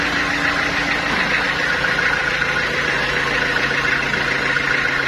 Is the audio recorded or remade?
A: recorded